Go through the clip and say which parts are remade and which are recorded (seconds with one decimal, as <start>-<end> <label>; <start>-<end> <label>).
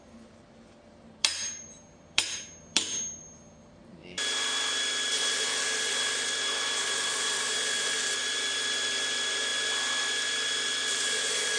0.0-11.6 remade